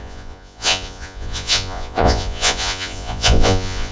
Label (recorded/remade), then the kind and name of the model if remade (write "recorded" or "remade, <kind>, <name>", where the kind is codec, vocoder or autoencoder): remade, vocoder, Vocos